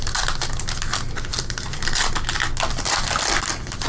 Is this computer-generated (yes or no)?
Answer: no